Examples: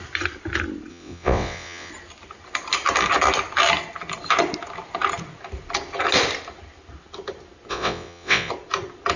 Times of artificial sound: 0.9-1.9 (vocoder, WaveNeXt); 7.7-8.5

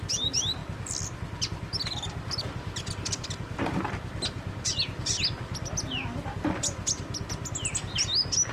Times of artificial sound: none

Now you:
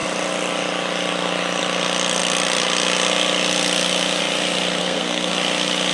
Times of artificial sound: 4.8-5.3 (codec, SNAC)

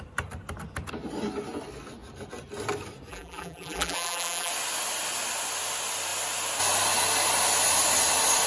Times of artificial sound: 3.1-4.5 (vocoder, BigVGAN v2)

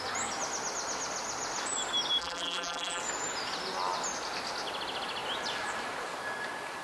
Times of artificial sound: 2.2-3.0 (vocoder, BigVGAN v2)

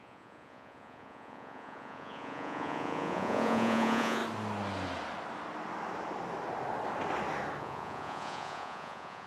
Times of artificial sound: 0.0-4.2 (vocoder, Vocos); 7.6-9.3